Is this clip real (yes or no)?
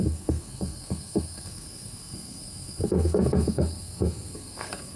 no